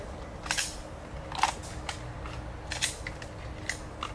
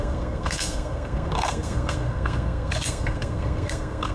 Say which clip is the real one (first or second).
first